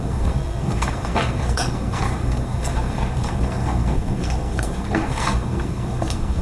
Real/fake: fake